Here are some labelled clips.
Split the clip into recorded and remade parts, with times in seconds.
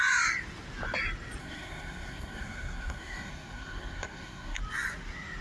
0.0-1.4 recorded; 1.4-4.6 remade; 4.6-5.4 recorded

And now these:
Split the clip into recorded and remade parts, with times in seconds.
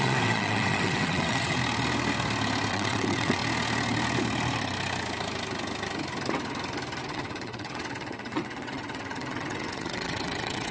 0.0-1.6 remade; 1.6-2.7 recorded; 2.7-3.4 remade; 3.4-7.0 recorded; 7.0-10.7 remade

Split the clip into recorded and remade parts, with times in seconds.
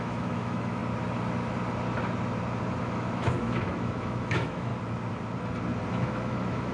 0.0-0.8 remade; 0.8-2.8 recorded; 2.8-4.7 remade; 4.7-5.9 recorded; 5.9-6.7 remade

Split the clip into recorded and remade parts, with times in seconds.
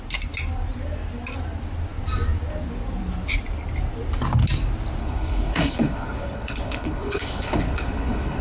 0.0-5.0 recorded; 5.0-8.4 remade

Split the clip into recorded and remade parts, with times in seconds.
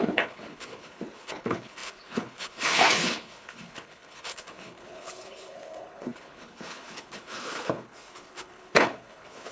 0.0-9.5 remade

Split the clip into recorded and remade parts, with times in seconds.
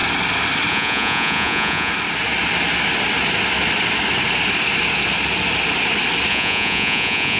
0.0-0.7 recorded; 0.7-1.9 remade; 1.9-6.3 recorded; 6.3-7.4 remade